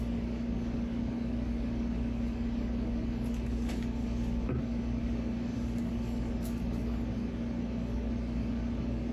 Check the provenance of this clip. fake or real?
fake